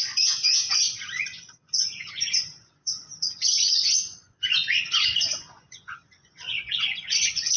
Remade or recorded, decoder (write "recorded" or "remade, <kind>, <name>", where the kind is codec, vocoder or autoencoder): remade, vocoder, Vocos